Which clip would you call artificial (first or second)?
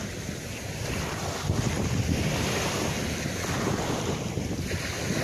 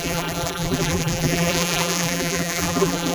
second